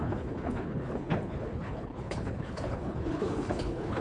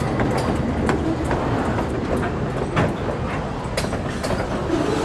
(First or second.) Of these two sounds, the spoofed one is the first